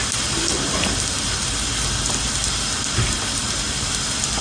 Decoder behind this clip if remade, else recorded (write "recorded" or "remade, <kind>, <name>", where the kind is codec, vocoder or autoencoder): recorded